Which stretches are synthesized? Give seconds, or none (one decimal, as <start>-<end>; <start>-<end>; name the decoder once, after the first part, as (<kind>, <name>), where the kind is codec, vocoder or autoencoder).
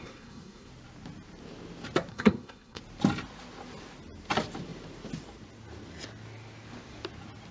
0.0-0.7 (codec, SNAC); 2.1-2.8